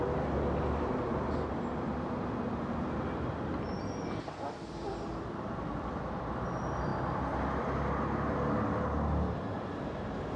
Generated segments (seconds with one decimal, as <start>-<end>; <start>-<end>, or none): none